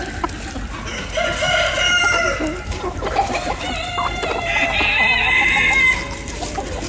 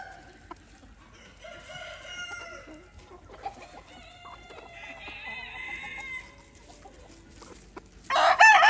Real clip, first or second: second